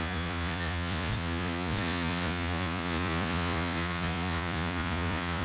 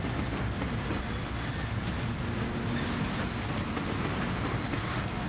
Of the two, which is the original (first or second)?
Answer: second